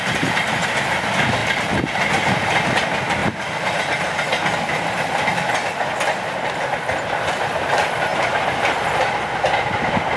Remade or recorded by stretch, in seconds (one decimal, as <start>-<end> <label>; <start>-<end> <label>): 0.0-3.2 recorded; 3.2-3.8 remade; 3.8-8.1 recorded; 8.1-10.2 remade